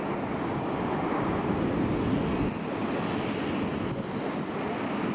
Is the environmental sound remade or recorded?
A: recorded